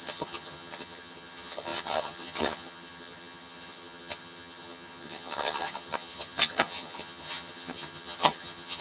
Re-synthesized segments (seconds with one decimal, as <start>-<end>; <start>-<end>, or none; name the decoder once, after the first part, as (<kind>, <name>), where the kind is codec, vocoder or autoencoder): 0.0-8.8 (vocoder, HiFi-GAN)